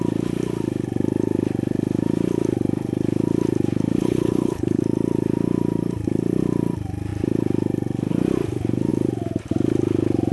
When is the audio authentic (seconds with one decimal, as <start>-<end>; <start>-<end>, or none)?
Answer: 0.0-4.0; 4.8-10.3